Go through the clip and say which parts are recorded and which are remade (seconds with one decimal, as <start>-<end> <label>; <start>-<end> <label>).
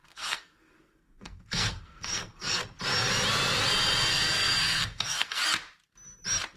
0.0-2.6 remade; 2.6-4.1 recorded; 4.1-5.4 remade; 5.4-6.6 recorded